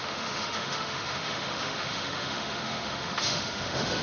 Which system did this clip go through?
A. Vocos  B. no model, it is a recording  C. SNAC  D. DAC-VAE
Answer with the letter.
D